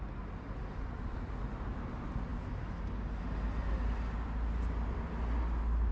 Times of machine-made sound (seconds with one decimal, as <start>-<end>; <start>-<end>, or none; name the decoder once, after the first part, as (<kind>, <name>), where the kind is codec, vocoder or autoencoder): none